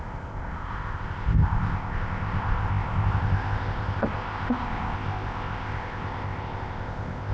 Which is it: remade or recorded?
remade